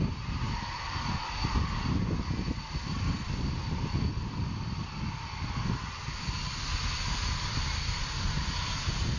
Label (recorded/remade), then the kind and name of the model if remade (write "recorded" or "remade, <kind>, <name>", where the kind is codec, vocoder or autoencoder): recorded